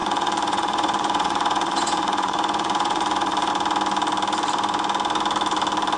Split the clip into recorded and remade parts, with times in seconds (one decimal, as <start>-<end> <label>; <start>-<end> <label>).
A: 0.0-3.5 remade; 3.5-6.0 recorded